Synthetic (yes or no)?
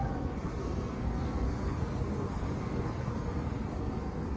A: yes